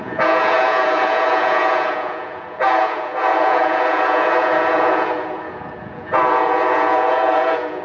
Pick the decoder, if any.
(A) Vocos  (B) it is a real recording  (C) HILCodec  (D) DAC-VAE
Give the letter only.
A